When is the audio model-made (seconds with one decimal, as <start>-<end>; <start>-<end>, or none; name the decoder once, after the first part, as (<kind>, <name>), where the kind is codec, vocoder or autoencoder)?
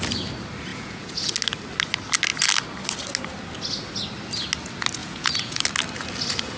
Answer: 0.7-1.3 (vocoder, Vocos); 5.0-5.6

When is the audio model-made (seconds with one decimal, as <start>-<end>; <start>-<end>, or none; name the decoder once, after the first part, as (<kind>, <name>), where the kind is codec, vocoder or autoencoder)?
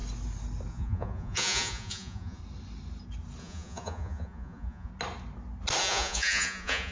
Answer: 0.7-2.4 (vocoder, Vocos); 3.4-4.9; 5.8-6.9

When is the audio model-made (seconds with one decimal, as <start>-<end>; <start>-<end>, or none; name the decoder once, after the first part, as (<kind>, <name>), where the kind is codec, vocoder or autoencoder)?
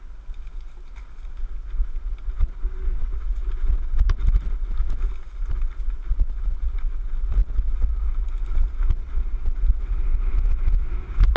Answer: none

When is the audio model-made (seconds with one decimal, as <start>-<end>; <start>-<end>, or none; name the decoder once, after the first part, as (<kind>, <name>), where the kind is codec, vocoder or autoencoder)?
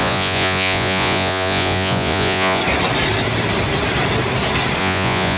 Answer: 0.0-2.6 (vocoder, Vocos); 4.8-5.4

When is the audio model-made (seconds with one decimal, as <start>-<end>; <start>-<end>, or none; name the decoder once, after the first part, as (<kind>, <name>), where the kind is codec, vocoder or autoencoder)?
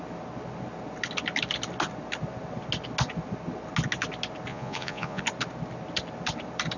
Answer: 4.5-5.2 (vocoder, Vocos)